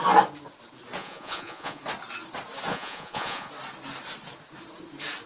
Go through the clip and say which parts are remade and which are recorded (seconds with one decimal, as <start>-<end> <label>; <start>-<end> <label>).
0.0-1.0 recorded; 1.0-1.8 remade; 1.8-2.7 recorded; 2.7-3.5 remade; 3.5-5.3 recorded